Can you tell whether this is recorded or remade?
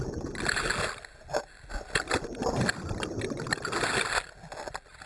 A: recorded